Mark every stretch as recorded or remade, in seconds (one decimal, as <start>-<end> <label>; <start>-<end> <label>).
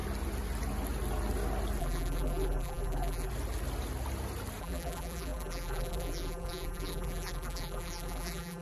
0.0-1.8 recorded; 1.8-3.3 remade; 3.3-4.6 recorded; 4.6-8.6 remade